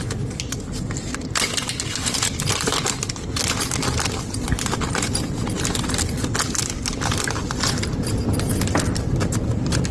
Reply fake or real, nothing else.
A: real